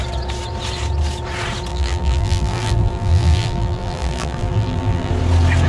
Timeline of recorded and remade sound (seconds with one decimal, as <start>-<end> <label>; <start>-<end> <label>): 0.0-1.7 recorded; 1.7-5.1 remade; 5.1-5.7 recorded